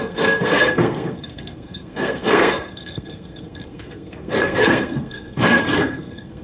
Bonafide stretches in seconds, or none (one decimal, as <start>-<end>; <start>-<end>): none